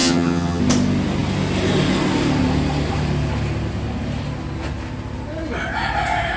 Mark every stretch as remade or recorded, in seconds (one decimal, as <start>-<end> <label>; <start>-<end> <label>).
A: 0.0-0.6 remade; 0.6-6.4 recorded